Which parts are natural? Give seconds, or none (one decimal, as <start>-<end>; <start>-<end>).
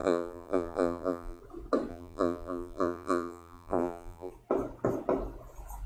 1.4-1.9; 4.3-5.9